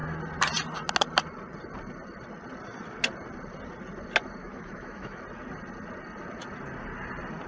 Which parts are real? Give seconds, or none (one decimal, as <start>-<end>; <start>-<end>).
0.0-4.4; 5.2-7.5